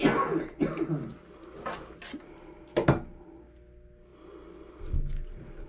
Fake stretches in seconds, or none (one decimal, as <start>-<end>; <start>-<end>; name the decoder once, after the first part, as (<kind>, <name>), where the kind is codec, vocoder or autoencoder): none